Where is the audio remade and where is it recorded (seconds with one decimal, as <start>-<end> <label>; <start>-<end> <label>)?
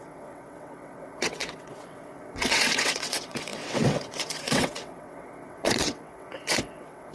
0.0-7.1 remade